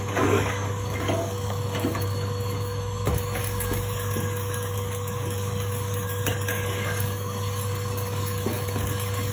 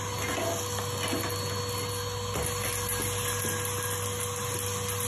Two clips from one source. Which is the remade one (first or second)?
first